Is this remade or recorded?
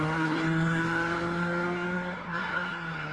remade